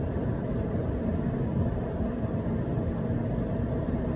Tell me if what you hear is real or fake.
real